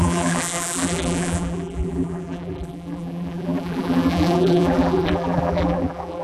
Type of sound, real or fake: fake